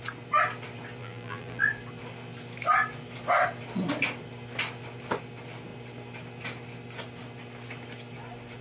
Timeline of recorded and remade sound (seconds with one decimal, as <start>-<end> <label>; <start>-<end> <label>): 0.0-1.0 recorded; 1.0-1.6 remade; 1.6-8.6 recorded